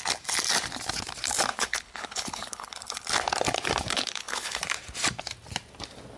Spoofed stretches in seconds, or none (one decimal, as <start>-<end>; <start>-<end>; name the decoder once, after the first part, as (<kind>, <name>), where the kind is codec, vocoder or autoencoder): 1.5-3.1 (codec, HILCodec); 3.9-4.6